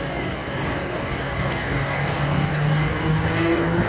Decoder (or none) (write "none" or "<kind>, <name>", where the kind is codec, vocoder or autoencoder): codec, DAC